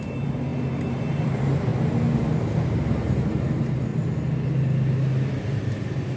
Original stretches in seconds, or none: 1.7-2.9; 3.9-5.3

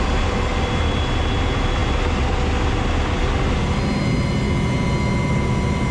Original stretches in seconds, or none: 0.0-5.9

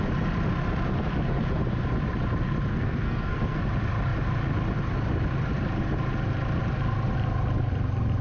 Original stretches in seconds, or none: 0.0-2.7; 3.6-8.2

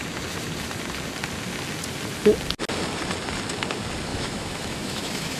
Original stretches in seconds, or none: 0.0-4.1